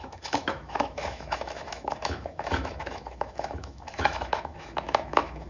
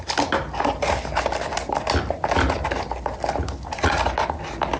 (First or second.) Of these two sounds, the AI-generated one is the first